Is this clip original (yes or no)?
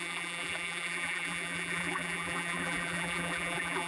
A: no